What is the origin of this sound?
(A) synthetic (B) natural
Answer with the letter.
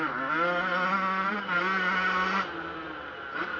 B